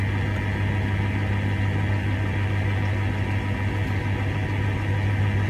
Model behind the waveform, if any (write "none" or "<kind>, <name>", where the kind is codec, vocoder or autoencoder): none